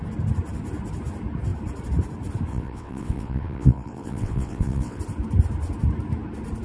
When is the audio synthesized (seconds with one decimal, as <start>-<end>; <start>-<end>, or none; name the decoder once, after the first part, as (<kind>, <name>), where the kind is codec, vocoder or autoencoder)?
2.5-5.0 (vocoder, WaveNeXt)